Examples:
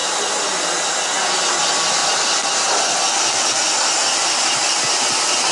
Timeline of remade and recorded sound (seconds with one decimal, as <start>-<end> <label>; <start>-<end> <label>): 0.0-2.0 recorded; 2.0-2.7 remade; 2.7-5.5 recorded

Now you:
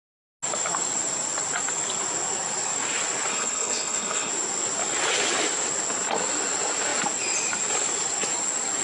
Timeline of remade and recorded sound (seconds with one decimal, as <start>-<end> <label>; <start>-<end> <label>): 0.0-3.3 recorded; 3.3-4.3 remade; 4.3-8.8 recorded

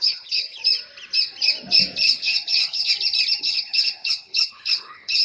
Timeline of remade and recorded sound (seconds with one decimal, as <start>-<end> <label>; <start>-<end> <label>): 0.0-0.6 remade; 0.6-2.1 recorded; 2.1-2.9 remade; 2.9-3.4 recorded; 3.4-5.2 remade

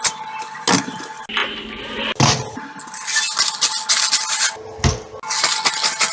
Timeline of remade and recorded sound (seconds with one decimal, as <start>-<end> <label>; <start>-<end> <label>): 0.0-6.1 recorded